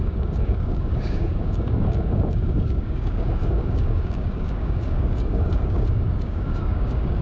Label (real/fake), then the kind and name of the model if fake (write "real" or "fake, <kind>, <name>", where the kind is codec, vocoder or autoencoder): fake, codec, DAC